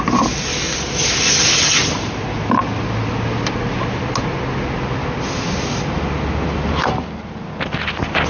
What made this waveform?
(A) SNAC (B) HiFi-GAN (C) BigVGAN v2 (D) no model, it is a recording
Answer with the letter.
D